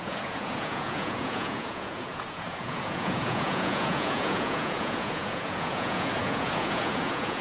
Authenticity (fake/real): fake